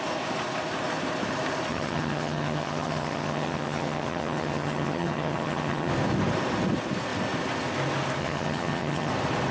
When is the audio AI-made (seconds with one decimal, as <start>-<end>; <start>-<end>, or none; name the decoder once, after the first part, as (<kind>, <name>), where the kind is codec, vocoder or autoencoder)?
1.7-5.9 (vocoder, HiFi-GAN); 8.2-9.1